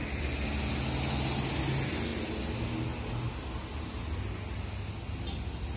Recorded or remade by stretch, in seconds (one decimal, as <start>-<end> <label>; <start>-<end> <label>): 0.0-5.8 recorded

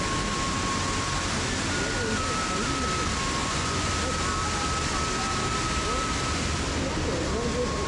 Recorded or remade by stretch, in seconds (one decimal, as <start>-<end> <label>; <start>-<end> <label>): 0.0-3.4 recorded; 3.4-3.9 remade; 3.9-7.9 recorded

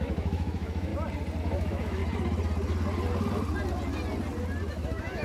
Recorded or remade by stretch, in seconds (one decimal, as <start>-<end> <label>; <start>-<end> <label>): 0.0-0.9 remade; 0.9-1.4 recorded; 1.4-2.0 remade; 2.0-4.7 recorded; 4.7-5.2 remade